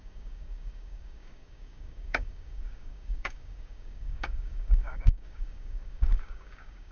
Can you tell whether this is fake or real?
fake